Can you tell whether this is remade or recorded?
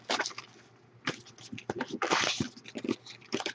recorded